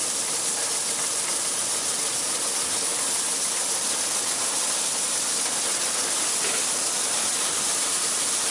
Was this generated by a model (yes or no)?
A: no